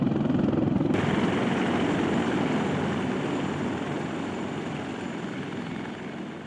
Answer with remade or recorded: recorded